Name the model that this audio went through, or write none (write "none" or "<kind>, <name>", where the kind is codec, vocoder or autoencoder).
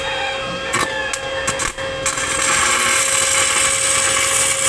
none